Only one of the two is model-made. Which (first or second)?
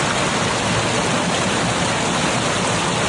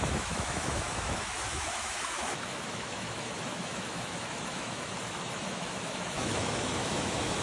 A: second